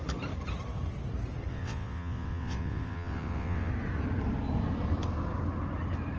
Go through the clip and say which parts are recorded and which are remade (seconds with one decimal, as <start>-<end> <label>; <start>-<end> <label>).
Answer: 0.0-1.5 recorded; 1.5-3.7 remade; 3.7-6.2 recorded

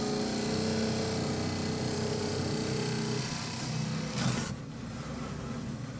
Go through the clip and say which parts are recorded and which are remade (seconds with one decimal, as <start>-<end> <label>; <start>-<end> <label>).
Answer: 0.0-6.0 recorded

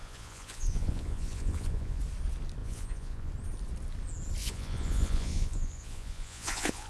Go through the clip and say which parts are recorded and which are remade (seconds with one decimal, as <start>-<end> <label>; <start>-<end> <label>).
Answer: 0.0-2.0 remade; 2.0-2.6 recorded; 2.6-3.3 remade; 3.3-4.4 recorded; 4.4-6.9 remade

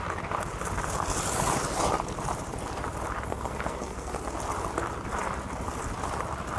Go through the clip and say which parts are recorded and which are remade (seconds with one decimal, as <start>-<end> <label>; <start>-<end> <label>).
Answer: 0.0-3.3 recorded; 3.3-4.2 remade; 4.2-6.6 recorded

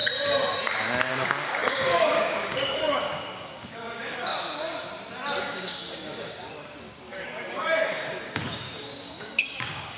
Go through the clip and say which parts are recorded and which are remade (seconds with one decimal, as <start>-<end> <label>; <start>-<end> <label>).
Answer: 0.0-1.1 recorded; 1.1-4.3 remade; 4.3-5.4 recorded; 5.4-10.0 remade

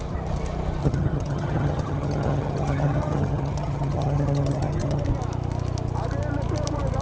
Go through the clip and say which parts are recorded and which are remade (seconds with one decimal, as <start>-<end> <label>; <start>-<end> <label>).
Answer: 0.0-0.8 recorded; 0.8-5.0 remade; 5.0-7.0 recorded

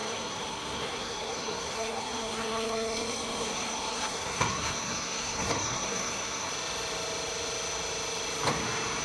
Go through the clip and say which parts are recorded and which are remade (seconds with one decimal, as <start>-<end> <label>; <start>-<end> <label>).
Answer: 0.0-6.5 remade; 6.5-9.0 recorded

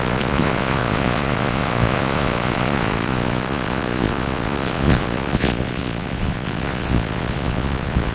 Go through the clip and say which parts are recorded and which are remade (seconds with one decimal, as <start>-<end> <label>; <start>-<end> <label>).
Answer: 0.0-8.1 remade